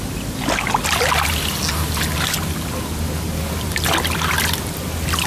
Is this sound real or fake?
real